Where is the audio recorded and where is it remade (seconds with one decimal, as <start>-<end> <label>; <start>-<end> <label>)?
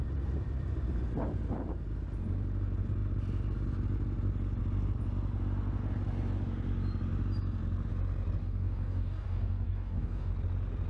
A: 0.0-8.4 recorded; 8.4-10.3 remade; 10.3-10.9 recorded